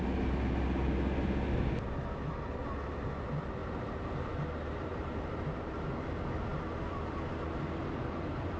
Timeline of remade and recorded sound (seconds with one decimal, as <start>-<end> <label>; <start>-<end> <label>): 0.0-3.6 recorded; 3.6-4.3 remade; 4.3-4.9 recorded; 4.9-5.9 remade; 5.9-8.6 recorded